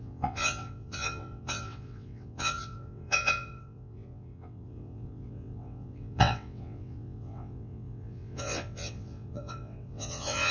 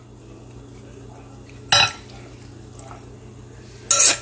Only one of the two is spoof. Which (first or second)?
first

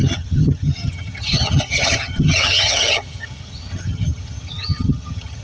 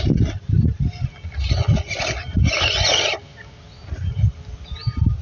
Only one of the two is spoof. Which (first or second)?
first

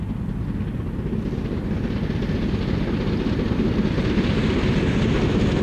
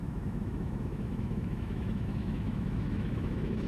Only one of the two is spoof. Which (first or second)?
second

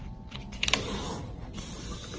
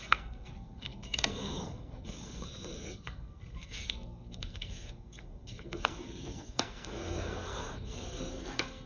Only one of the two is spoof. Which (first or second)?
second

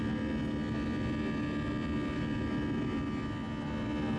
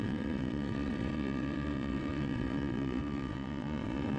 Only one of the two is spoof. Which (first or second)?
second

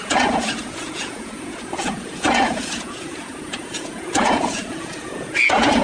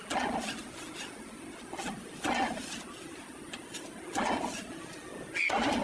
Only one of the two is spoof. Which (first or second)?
first